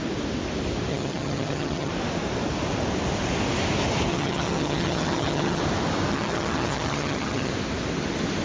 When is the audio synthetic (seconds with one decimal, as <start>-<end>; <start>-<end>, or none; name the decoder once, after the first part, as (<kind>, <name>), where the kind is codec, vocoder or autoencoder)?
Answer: 0.9-1.9 (vocoder, HiFi-GAN); 4.1-5.6; 6.1-7.5